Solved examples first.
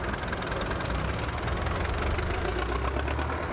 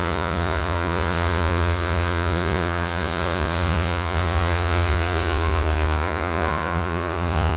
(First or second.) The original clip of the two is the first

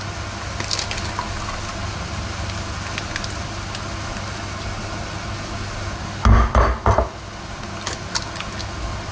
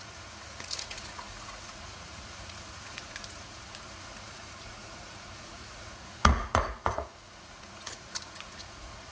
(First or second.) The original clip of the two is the first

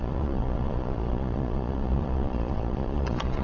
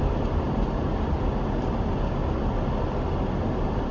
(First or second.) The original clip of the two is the second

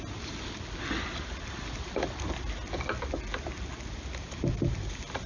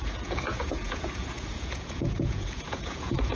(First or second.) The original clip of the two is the first